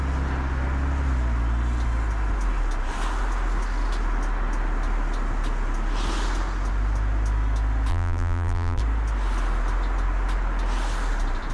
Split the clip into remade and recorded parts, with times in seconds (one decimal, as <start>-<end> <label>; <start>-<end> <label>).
0.0-7.9 recorded; 7.9-8.8 remade; 8.8-11.5 recorded